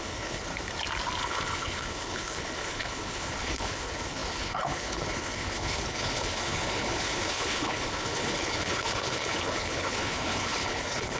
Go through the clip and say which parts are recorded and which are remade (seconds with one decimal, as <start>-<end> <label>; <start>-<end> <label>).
0.0-0.5 remade; 0.5-1.2 recorded; 1.2-11.2 remade